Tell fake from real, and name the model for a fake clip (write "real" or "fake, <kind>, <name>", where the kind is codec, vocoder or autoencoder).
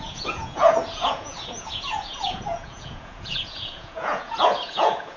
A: fake, vocoder, Vocos